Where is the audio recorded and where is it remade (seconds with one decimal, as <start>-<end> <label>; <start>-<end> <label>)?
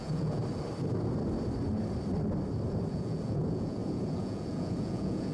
0.0-0.4 remade; 0.4-2.9 recorded; 2.9-5.3 remade